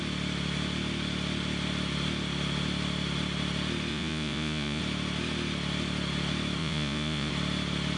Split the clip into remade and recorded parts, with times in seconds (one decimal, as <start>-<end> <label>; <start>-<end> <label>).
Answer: 0.0-3.9 recorded; 3.9-4.8 remade; 4.8-6.6 recorded; 6.6-7.3 remade; 7.3-8.0 recorded